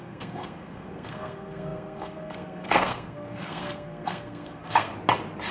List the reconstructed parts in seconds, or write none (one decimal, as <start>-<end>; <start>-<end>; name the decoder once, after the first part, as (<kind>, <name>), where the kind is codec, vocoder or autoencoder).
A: 0.0-4.9 (codec, SNAC)